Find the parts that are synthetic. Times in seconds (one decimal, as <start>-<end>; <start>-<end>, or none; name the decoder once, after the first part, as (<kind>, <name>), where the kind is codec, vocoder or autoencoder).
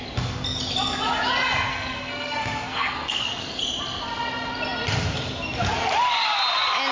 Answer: 1.7-3.6 (codec, SNAC)